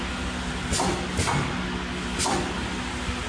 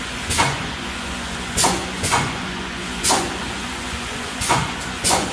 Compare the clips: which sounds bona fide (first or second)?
first